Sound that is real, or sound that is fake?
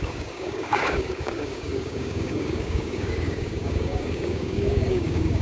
fake